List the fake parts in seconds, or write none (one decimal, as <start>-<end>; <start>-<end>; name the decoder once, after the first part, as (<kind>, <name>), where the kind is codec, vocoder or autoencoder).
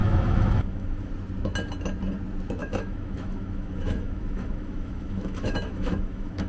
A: 0.0-1.1 (autoencoder, DAC-VAE); 2.6-6.5